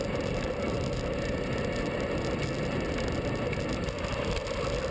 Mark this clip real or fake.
real